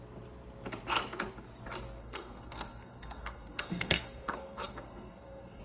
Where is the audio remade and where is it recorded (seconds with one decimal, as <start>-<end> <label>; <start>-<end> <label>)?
0.0-2.0 recorded; 2.0-5.6 remade

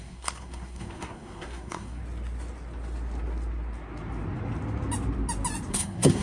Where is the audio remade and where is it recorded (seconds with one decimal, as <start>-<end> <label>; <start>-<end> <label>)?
0.0-2.0 remade; 2.0-5.7 recorded; 5.7-6.2 remade

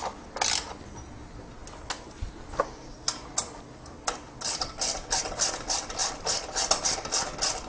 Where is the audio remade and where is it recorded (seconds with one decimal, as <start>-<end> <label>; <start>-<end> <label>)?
0.0-7.7 recorded

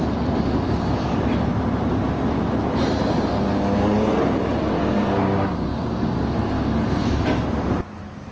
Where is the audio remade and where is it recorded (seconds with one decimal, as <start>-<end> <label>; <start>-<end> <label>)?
0.0-4.7 recorded; 4.7-7.2 remade; 7.2-8.3 recorded

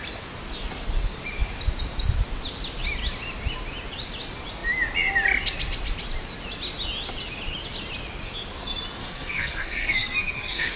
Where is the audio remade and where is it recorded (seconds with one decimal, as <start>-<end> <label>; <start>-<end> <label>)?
0.0-9.0 recorded; 9.0-10.8 remade

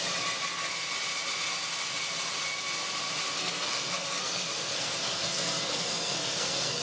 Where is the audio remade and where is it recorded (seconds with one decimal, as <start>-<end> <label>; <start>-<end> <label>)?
0.0-3.4 recorded; 3.4-6.8 remade

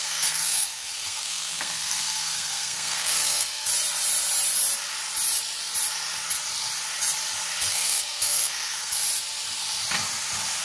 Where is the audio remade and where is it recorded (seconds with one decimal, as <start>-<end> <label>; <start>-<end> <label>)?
0.0-3.7 remade; 3.7-7.7 recorded; 7.7-9.0 remade; 9.0-10.6 recorded

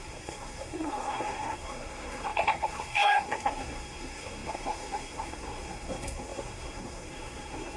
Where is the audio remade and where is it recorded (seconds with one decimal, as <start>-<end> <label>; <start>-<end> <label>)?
0.0-7.8 remade